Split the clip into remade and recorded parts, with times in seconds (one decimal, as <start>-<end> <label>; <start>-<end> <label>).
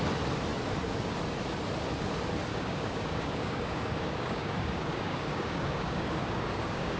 0.0-2.5 recorded; 2.5-7.0 remade